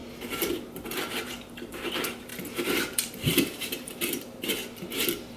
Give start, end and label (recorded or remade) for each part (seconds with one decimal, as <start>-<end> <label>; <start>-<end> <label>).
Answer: 0.0-0.7 recorded; 0.7-4.6 remade; 4.6-5.4 recorded